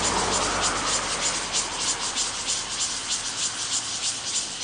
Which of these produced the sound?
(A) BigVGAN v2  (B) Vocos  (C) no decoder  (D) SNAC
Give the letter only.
C